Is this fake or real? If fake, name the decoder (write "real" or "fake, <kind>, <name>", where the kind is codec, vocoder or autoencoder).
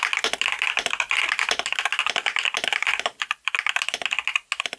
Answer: real